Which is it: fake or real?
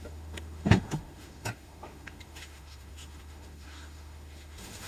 fake